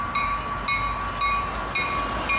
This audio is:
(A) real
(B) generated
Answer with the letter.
A